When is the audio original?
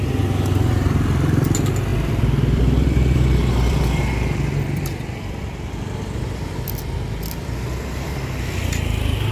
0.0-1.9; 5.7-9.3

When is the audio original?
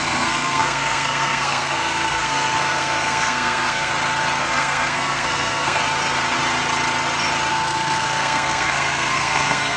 3.9-4.4; 5.8-7.5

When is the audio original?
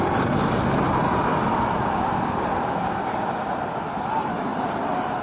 0.0-5.2